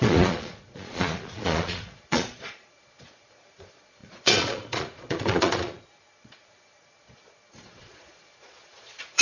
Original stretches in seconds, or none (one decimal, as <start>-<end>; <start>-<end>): none